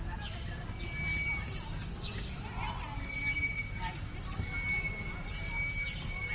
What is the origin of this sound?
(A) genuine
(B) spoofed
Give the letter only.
A